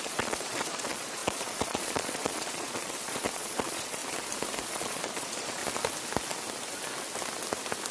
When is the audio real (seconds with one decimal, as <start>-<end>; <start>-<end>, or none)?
4.0-4.7; 5.6-7.9